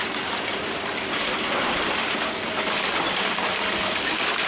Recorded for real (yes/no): yes